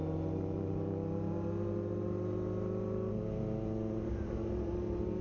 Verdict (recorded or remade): recorded